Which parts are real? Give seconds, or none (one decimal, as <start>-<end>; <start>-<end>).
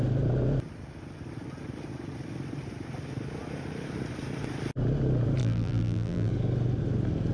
0.0-5.4; 6.3-7.3